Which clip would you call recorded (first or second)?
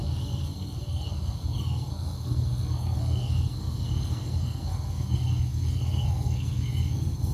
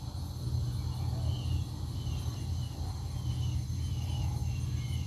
second